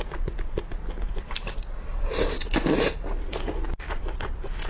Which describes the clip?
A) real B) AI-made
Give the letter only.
A